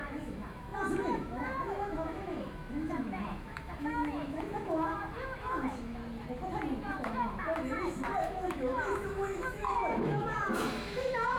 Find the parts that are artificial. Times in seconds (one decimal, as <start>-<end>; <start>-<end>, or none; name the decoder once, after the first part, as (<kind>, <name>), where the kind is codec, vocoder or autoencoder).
0.0-6.0 (autoencoder, DAC-VAE); 6.8-11.4

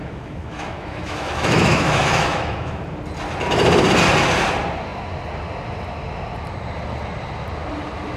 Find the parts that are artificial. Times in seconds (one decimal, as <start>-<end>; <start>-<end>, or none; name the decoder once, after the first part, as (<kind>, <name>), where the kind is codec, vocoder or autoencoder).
0.0-2.7 (autoencoder, DAC-VAE)

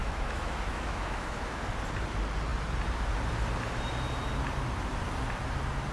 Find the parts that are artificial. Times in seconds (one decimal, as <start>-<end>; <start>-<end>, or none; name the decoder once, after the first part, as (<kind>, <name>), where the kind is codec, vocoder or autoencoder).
0.0-1.6 (autoencoder, DAC-VAE)

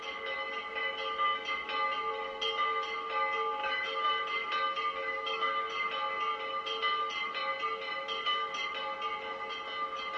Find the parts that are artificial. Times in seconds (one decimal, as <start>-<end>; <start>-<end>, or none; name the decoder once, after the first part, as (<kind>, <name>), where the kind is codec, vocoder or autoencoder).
3.6-4.1 (autoencoder, DAC-VAE); 5.0-5.5